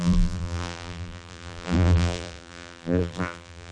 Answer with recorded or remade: remade